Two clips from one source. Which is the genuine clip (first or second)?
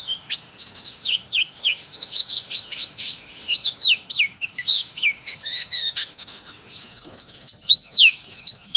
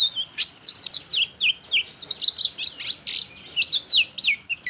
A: second